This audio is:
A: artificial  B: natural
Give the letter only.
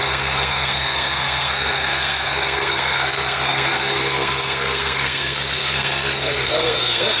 A